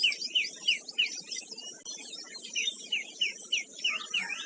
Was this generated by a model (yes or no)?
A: no